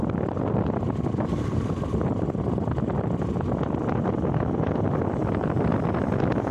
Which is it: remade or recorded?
recorded